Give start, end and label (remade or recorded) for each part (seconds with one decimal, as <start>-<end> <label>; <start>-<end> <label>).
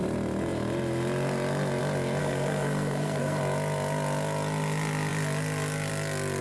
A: 0.0-2.2 recorded; 2.2-3.4 remade; 3.4-6.4 recorded